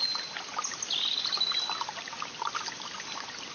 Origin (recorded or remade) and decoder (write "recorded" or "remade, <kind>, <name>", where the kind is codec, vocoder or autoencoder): recorded